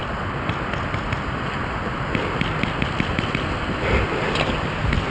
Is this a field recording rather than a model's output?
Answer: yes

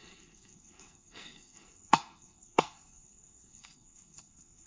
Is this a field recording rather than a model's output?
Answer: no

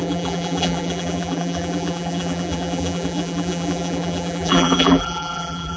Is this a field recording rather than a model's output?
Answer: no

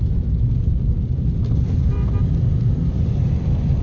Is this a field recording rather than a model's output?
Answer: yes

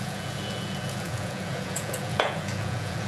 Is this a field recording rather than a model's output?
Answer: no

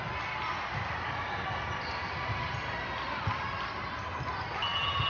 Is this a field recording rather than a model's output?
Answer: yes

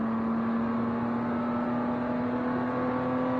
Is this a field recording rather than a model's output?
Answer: yes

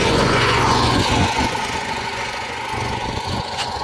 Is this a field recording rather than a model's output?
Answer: no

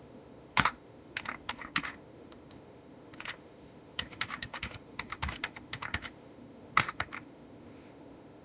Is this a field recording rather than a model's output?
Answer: no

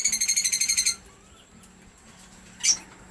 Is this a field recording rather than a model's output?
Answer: yes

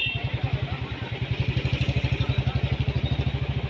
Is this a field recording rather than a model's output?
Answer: yes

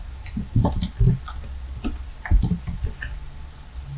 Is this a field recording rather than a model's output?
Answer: yes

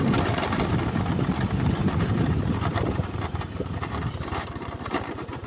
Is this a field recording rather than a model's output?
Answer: no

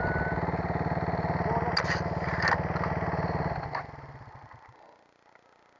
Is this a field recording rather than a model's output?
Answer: yes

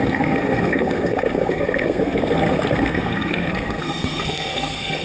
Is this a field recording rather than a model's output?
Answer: no